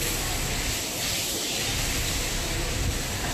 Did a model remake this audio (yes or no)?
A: yes